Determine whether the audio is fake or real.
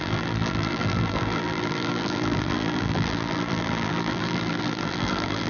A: fake